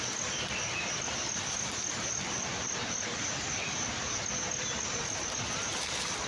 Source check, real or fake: real